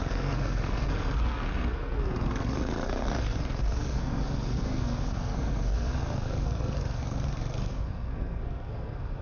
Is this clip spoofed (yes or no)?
yes